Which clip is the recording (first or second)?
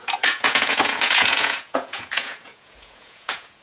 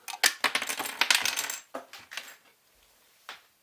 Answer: second